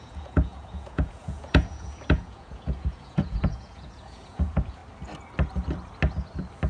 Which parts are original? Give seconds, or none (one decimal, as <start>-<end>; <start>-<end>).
4.8-6.7